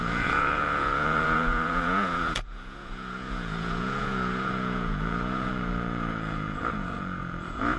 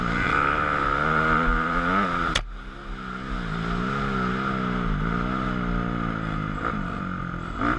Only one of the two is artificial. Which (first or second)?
first